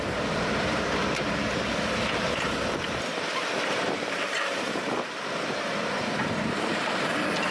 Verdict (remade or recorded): remade